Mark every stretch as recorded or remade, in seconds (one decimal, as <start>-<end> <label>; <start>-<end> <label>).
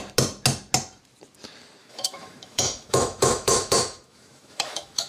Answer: 0.0-1.8 recorded; 1.8-5.1 remade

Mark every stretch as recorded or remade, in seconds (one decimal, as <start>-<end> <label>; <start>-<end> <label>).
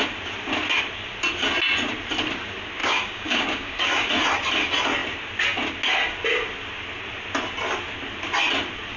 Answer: 0.0-2.8 recorded; 2.8-4.1 remade; 4.1-9.0 recorded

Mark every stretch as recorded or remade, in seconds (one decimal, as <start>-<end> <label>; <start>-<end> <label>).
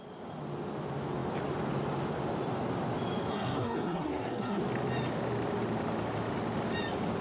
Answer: 0.0-3.3 recorded; 3.3-4.6 remade; 4.6-7.2 recorded